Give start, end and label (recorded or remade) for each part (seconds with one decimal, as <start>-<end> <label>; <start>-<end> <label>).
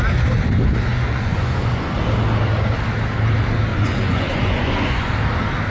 0.0-0.9 recorded; 0.9-1.9 remade; 1.9-3.7 recorded; 3.7-5.1 remade; 5.1-5.7 recorded